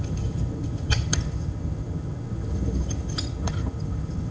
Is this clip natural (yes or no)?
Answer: no